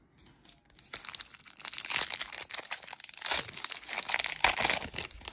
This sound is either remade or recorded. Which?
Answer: recorded